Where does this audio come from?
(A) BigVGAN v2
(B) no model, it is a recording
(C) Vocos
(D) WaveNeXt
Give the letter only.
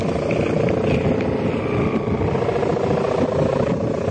B